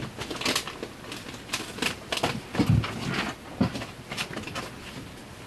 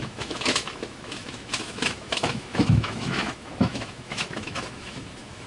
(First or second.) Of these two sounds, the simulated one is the second